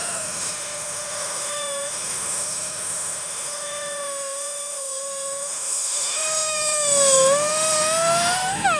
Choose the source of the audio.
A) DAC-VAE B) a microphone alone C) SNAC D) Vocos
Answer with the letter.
A